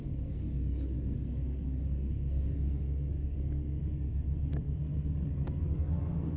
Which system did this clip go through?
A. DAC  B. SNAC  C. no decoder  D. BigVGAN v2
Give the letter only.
B